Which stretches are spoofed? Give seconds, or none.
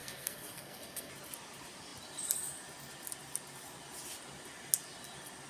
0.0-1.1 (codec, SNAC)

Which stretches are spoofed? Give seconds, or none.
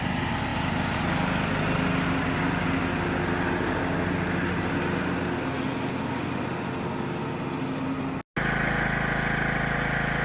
none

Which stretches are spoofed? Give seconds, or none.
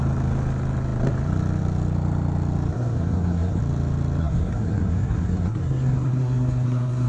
2.7-3.6 (codec, SNAC); 4.2-7.1